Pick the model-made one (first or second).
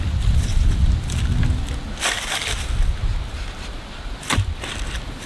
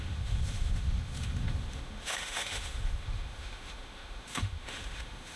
second